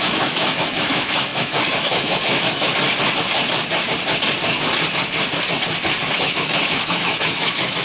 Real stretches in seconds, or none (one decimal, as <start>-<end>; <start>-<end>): 2.7-6.0